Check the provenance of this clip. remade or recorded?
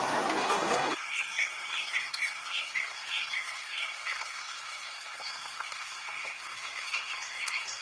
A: remade